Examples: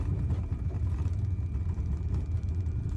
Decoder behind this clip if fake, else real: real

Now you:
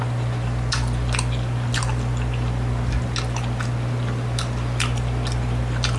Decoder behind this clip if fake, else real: real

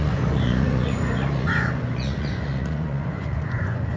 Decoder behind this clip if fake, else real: fake, vocoder, Vocos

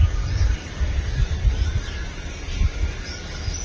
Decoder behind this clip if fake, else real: real